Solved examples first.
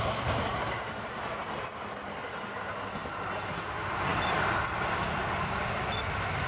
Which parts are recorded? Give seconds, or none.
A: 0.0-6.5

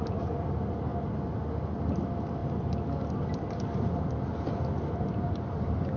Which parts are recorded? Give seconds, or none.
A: 0.0-6.0

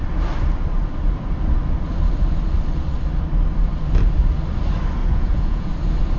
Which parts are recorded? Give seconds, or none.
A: 0.0-5.0; 5.7-6.2

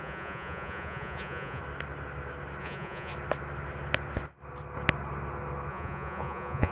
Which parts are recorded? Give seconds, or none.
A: 1.6-2.6; 3.1-5.7

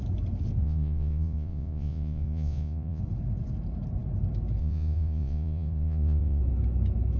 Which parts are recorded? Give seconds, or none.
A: 0.0-0.6; 3.0-4.6; 6.4-7.2

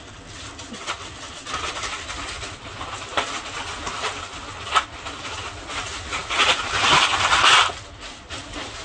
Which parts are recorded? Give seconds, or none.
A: 0.0-8.8